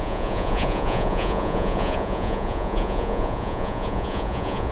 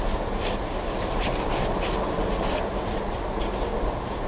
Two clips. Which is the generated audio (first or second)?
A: first